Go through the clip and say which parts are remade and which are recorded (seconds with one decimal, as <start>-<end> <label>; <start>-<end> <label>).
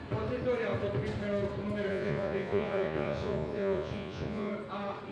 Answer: 0.0-1.9 recorded; 1.9-4.5 remade; 4.5-5.1 recorded